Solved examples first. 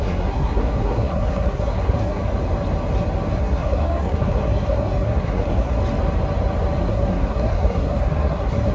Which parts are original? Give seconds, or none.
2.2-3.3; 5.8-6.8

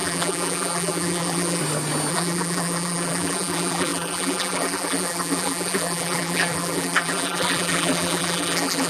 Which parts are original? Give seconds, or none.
1.6-2.1

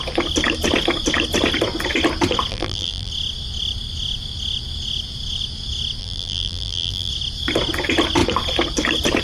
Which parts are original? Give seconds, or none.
0.0-2.5; 3.1-6.0; 7.1-9.2

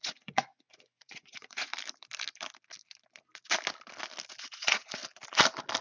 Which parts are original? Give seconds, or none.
1.7-4.4; 5.0-5.8